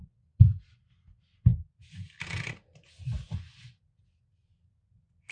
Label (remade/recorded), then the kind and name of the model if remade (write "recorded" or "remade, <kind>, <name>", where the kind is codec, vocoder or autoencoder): recorded